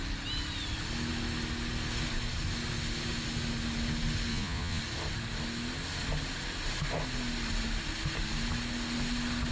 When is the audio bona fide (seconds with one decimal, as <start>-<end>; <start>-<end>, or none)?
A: 0.0-4.3; 4.8-9.5